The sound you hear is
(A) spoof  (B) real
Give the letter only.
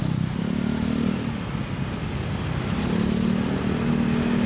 B